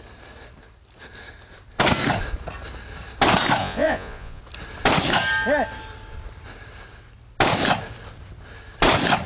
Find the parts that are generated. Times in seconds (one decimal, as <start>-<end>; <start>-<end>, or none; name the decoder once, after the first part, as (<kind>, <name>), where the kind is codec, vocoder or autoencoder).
3.6-4.4 (vocoder, Vocos)